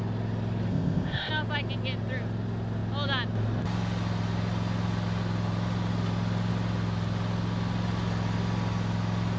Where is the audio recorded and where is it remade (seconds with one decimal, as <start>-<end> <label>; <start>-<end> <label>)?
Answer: 0.0-0.7 recorded; 0.7-1.3 remade; 1.3-9.4 recorded